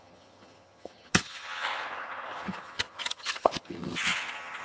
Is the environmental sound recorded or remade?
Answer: remade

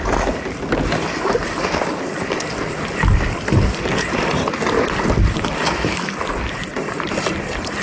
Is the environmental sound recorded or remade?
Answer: recorded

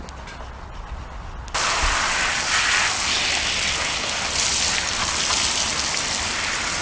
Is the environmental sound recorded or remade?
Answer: recorded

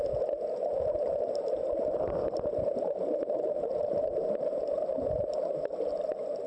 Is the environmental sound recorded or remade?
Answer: recorded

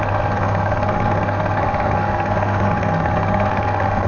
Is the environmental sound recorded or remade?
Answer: remade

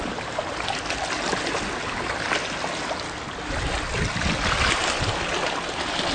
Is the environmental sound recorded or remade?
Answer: recorded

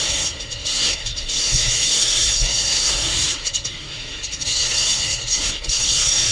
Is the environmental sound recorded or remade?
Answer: remade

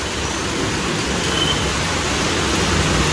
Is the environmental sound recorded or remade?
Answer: recorded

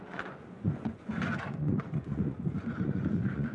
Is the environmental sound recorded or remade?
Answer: remade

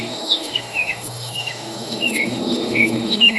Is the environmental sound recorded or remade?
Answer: remade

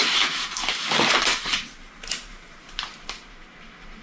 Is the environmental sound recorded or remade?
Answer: remade